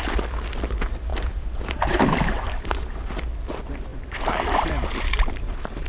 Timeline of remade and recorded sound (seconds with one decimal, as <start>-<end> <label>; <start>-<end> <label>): 0.0-1.1 recorded; 1.1-3.2 remade; 3.2-3.9 recorded; 3.9-5.9 remade

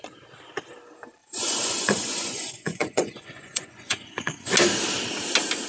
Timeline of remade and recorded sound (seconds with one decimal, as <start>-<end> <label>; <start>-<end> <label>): 0.0-1.2 recorded; 1.2-4.5 remade; 4.5-5.7 recorded

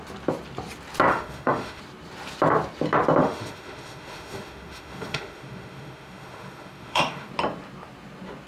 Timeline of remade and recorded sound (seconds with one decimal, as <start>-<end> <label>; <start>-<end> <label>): 0.0-1.1 recorded; 1.1-1.8 remade; 1.8-3.2 recorded; 3.2-7.3 remade; 7.3-8.5 recorded

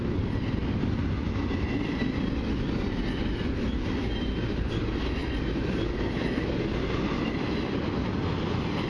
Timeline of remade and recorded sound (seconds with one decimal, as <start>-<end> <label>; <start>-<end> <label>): 0.0-8.9 recorded

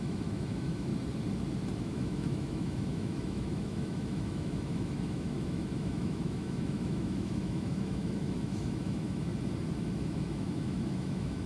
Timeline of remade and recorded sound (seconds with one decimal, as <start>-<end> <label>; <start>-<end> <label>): 0.0-0.9 remade; 0.9-1.8 recorded; 1.8-9.3 remade; 9.3-10.0 recorded; 10.0-11.5 remade

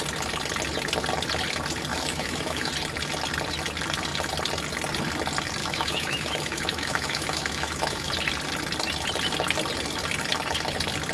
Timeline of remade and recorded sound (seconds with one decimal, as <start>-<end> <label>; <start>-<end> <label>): 0.0-1.9 recorded; 1.9-2.7 remade; 2.7-5.6 recorded; 5.6-8.1 remade; 8.1-11.1 recorded